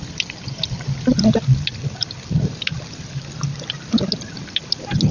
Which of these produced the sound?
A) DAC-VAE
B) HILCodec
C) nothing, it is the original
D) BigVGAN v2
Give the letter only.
C